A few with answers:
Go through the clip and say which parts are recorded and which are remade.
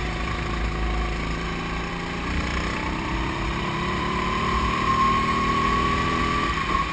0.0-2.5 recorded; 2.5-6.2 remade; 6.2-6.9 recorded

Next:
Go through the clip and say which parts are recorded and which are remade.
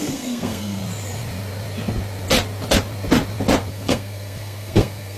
0.0-0.8 remade; 0.8-3.7 recorded; 3.7-5.2 remade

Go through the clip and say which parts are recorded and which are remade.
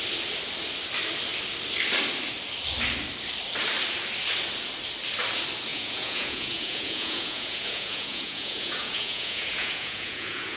0.0-5.7 recorded; 5.7-10.6 remade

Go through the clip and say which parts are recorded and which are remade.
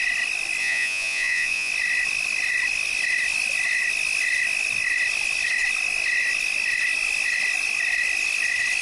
0.0-0.6 recorded; 0.6-1.7 remade; 1.7-8.8 recorded